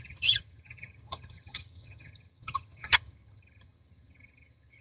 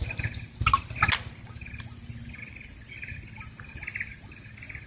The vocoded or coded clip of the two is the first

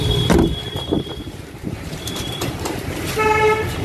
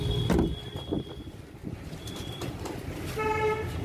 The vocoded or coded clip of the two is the first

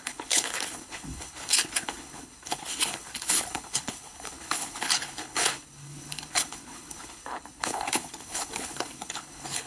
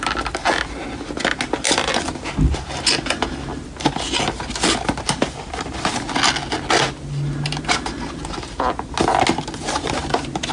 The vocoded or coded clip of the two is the first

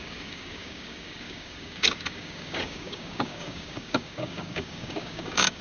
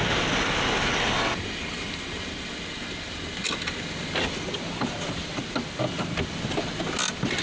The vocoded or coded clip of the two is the first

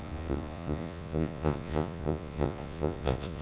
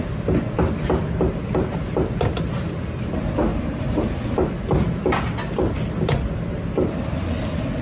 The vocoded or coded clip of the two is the first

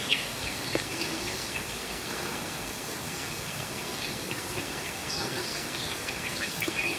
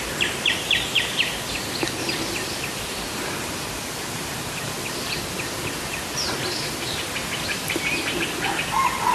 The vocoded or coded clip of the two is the first